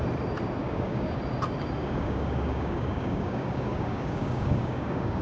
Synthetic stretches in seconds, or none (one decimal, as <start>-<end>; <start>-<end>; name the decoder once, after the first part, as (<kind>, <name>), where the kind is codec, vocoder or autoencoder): 0.6-1.2 (codec, DAC); 1.8-5.2